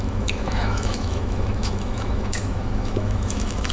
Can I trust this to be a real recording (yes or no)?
no